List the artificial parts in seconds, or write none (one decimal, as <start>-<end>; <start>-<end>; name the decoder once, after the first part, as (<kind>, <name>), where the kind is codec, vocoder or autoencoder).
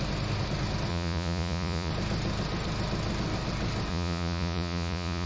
0.9-1.9 (vocoder, Vocos); 3.9-5.3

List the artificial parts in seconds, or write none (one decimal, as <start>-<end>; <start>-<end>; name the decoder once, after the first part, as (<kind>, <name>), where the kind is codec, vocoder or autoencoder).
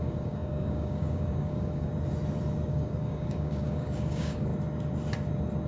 0.0-1.9 (codec, DAC); 2.7-4.5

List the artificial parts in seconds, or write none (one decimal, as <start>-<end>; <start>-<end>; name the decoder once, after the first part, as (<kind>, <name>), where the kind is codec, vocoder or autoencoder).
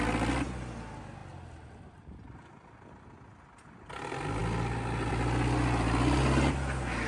none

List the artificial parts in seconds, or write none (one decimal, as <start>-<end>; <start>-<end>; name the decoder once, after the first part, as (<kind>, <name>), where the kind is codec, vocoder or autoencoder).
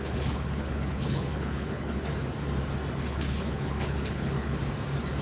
0.0-2.1 (codec, HILCodec); 3.1-4.6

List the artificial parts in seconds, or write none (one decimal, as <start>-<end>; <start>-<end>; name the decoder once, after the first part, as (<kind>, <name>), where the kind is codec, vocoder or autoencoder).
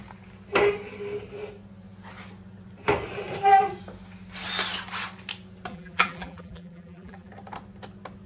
5.7-7.3 (vocoder, BigVGAN v2)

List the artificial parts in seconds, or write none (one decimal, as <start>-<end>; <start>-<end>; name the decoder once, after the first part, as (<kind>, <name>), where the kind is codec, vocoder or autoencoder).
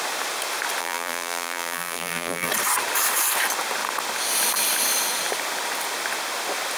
0.8-2.5 (vocoder, BigVGAN v2)